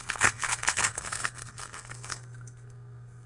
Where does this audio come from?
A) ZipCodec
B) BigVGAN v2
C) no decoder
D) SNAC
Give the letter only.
D